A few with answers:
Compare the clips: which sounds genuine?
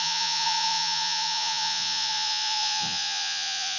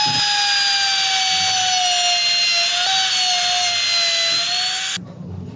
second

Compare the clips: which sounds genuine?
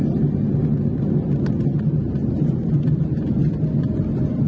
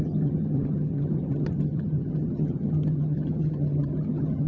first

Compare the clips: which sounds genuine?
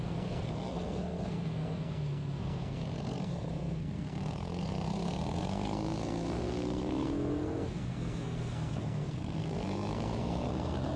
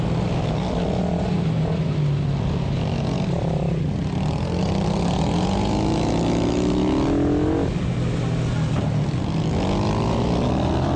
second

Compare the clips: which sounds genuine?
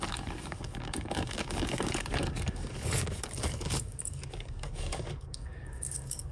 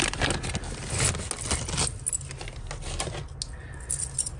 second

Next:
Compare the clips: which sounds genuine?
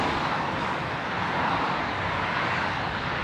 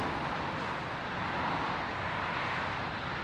second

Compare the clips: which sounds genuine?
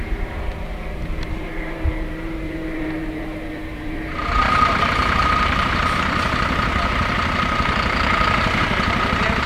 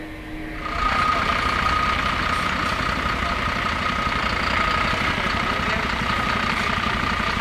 second